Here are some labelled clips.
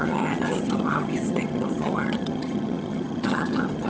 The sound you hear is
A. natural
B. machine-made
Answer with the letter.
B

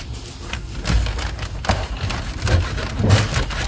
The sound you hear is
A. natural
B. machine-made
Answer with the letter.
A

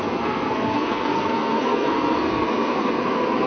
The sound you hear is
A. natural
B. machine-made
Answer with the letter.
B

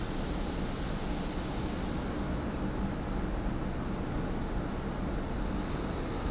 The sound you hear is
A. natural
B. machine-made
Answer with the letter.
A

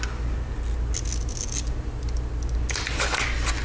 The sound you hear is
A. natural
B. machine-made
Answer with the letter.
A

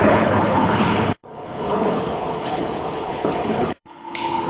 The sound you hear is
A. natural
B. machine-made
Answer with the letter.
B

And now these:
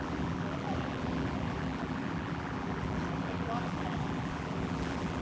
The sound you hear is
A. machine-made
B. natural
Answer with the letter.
A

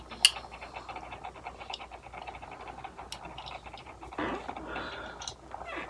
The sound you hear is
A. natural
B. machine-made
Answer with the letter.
A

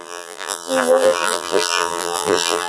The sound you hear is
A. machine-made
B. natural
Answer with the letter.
A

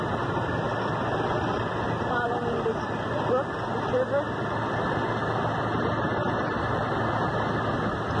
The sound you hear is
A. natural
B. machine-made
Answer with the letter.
A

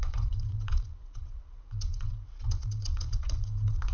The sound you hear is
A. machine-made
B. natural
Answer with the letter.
A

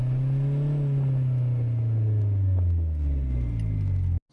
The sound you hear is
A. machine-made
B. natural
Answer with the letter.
B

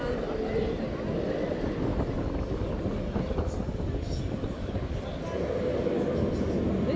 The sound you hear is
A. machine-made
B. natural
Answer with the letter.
B